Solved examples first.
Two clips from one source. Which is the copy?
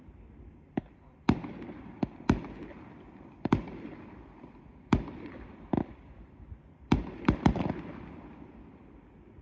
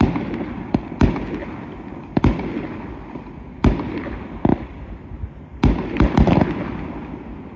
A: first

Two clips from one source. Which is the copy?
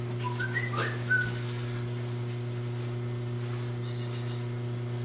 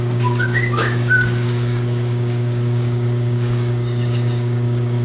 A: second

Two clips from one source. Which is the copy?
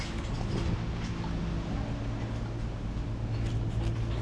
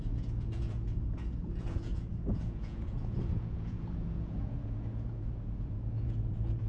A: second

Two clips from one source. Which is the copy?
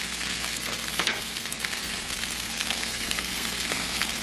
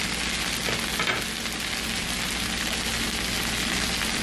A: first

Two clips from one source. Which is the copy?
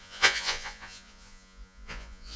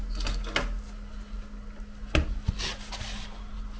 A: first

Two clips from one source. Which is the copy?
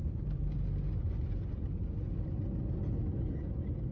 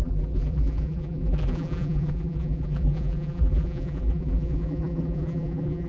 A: second